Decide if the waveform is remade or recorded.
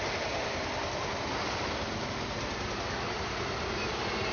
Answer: remade